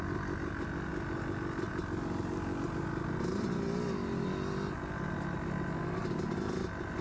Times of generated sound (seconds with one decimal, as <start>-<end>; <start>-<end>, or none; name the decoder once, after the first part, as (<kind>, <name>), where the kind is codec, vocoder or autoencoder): none